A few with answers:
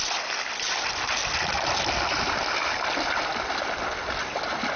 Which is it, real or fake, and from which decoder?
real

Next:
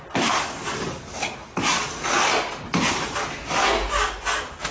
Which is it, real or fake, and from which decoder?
real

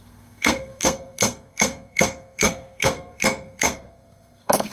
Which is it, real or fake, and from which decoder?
fake, codec, SNAC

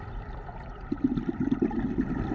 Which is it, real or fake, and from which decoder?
real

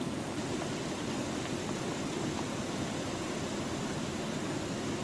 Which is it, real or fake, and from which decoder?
fake, vocoder, BigVGAN v2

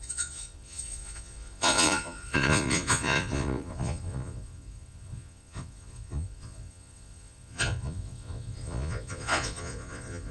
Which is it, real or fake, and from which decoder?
fake, vocoder, Vocos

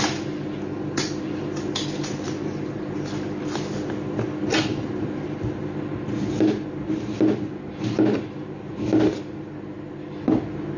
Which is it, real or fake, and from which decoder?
real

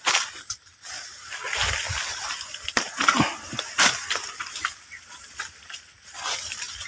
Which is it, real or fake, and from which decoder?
real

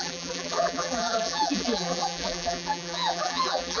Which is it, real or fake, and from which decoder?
fake, vocoder, BigVGAN v2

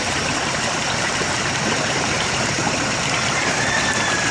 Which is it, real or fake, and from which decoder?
fake, vocoder, BigVGAN v2